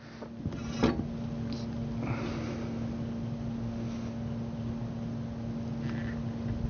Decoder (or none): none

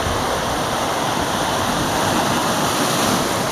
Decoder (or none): none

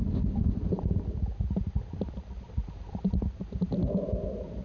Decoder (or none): none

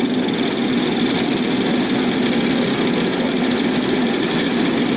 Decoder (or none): none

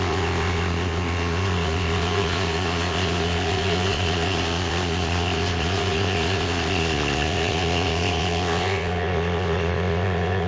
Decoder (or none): vocoder, Vocos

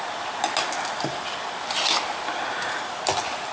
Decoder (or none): none